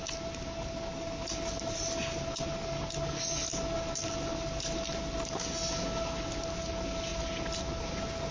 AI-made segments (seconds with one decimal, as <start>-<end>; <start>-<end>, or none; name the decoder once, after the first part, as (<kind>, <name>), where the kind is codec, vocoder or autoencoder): none